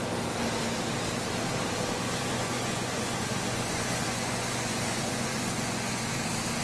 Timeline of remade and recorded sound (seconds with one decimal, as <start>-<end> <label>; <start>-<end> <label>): 0.0-2.0 recorded; 2.0-6.0 remade; 6.0-6.6 recorded